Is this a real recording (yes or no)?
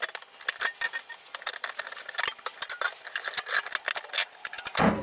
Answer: yes